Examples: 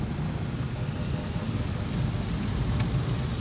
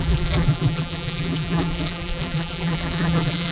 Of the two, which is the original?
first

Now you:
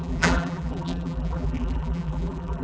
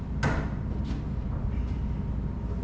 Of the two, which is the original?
second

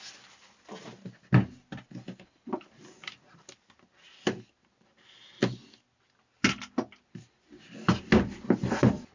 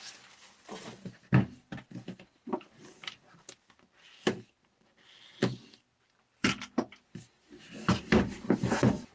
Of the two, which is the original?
first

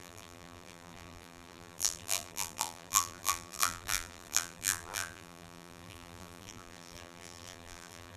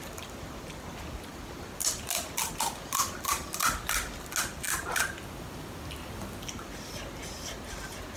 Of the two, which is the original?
second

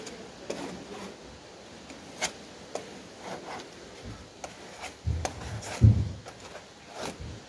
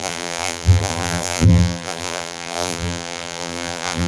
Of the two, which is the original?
first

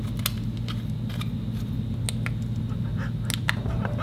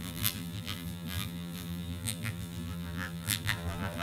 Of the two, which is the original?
first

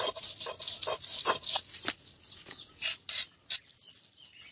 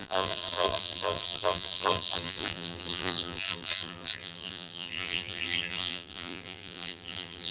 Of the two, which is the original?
first